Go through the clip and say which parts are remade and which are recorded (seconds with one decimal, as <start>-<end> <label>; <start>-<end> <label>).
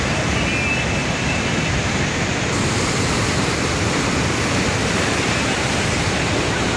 0.0-1.0 recorded; 1.0-1.9 remade; 1.9-4.8 recorded; 4.8-6.8 remade